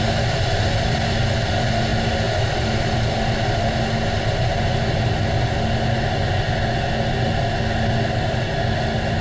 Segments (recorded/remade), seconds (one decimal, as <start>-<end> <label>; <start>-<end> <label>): 0.0-9.2 recorded